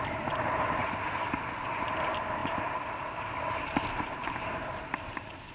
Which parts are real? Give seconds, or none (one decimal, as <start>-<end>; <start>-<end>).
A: 0.0-2.4; 4.6-5.5